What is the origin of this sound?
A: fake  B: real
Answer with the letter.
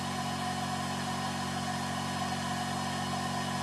B